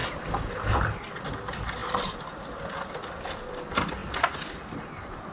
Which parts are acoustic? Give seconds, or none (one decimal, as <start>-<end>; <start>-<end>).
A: 0.0-5.3